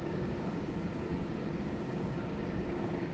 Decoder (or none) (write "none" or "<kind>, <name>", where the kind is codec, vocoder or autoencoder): codec, DAC